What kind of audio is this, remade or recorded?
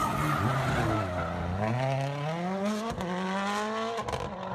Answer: recorded